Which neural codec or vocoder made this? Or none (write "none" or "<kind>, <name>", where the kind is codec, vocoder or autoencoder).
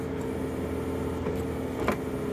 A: none